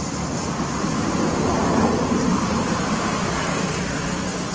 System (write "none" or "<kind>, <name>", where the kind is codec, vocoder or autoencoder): none